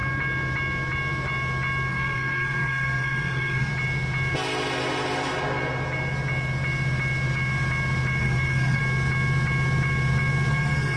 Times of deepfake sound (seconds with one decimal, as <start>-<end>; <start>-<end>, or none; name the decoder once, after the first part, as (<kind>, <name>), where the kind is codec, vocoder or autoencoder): 1.9-3.7 (codec, SNAC); 8.2-8.8; 10.5-11.0